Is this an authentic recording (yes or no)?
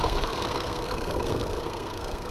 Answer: no